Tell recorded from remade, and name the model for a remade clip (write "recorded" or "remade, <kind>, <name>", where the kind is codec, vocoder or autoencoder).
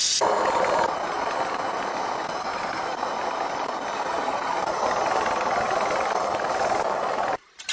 recorded